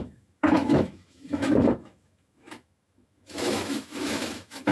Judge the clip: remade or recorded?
remade